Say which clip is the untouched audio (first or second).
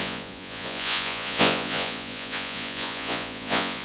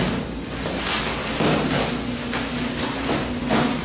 second